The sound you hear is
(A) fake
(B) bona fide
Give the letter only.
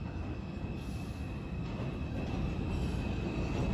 B